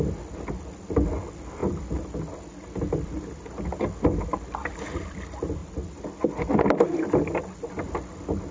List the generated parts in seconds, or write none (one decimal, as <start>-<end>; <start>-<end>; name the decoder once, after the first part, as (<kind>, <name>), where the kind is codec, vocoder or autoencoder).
none